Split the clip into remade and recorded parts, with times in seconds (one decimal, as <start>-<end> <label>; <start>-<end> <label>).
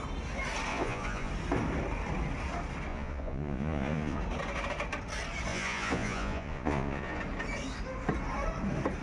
0.0-0.7 recorded; 0.7-1.3 remade; 1.3-2.9 recorded; 2.9-4.2 remade; 4.2-5.5 recorded; 5.5-7.2 remade; 7.2-9.0 recorded